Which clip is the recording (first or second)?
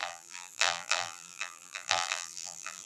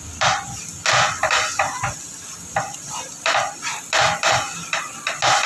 second